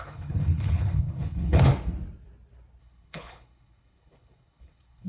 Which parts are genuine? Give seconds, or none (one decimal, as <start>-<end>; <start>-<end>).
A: 1.7-2.8